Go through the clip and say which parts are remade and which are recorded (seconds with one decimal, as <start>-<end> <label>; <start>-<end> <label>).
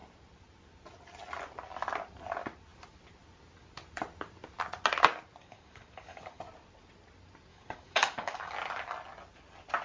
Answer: 0.0-5.4 recorded; 5.4-6.4 remade; 6.4-7.5 recorded; 7.5-8.5 remade; 8.5-9.8 recorded